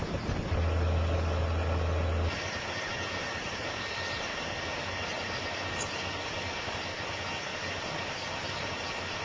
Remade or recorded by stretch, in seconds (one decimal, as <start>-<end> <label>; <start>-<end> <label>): 0.0-9.2 recorded